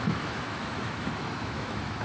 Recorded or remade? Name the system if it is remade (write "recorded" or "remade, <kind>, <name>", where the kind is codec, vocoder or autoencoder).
remade, autoencoder, DAC-VAE